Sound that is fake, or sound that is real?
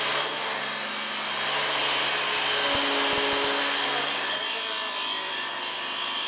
real